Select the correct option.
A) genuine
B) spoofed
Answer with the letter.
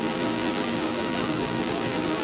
B